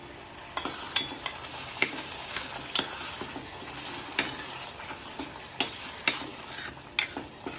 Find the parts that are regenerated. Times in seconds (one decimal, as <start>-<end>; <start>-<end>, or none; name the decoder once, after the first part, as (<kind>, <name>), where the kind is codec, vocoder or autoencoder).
1.5-2.5 (codec, DAC)